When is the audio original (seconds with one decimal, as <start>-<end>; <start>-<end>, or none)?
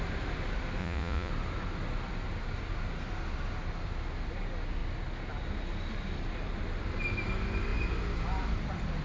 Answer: 0.0-0.8; 1.3-9.0